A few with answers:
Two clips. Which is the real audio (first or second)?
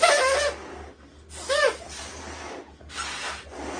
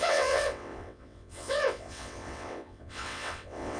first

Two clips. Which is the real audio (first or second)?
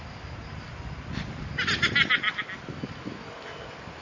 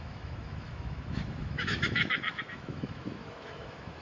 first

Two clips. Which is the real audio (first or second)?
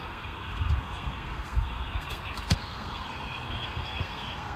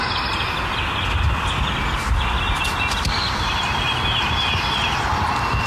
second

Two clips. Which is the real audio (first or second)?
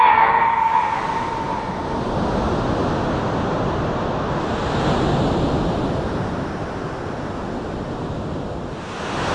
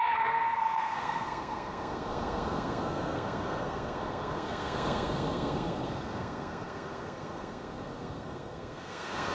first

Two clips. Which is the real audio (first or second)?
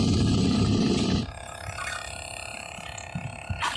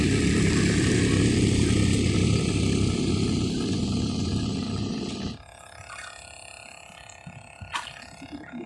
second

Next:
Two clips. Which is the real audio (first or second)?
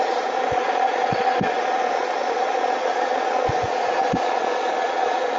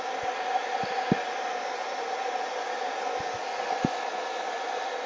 second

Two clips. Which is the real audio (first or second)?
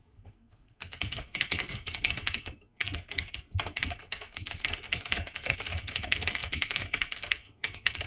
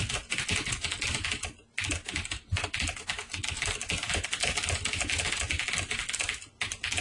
second